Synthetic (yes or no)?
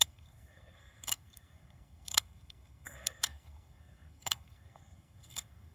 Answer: yes